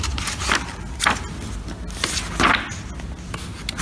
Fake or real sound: real